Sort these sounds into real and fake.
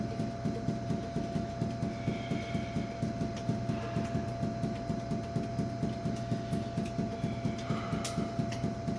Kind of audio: real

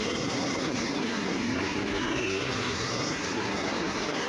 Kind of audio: fake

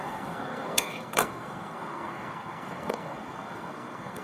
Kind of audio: fake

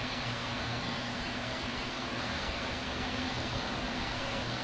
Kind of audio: fake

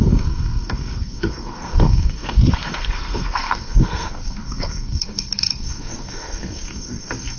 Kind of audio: fake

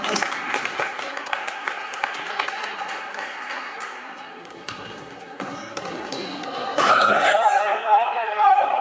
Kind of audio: fake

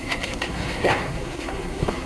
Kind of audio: fake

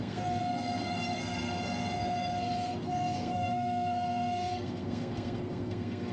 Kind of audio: fake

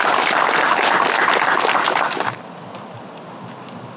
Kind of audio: real